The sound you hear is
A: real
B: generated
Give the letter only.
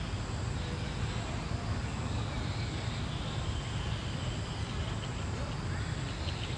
A